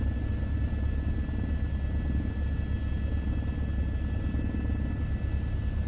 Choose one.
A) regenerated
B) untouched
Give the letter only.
B